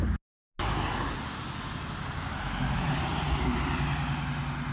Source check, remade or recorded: recorded